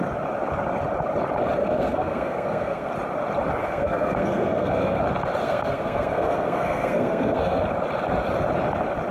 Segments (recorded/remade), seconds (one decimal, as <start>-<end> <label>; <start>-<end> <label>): 0.0-1.6 recorded; 1.6-2.9 remade; 2.9-3.6 recorded; 3.6-5.0 remade; 5.0-5.4 recorded; 5.4-7.6 remade; 7.6-9.1 recorded

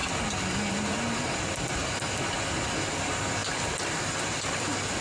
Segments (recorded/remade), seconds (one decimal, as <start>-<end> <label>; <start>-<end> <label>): 0.0-5.0 recorded